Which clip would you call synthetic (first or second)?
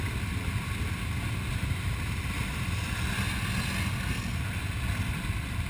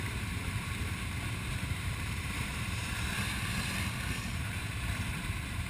second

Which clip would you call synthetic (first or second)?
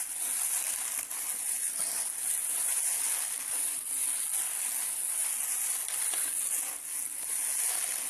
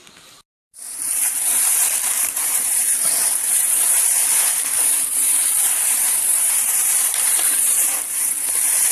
second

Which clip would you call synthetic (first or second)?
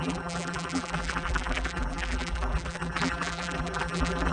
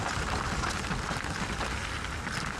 first